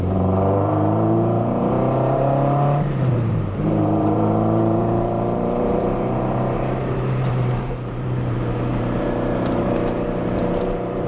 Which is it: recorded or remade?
remade